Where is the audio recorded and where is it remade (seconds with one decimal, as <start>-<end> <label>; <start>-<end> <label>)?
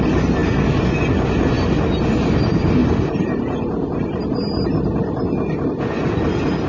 0.0-6.7 recorded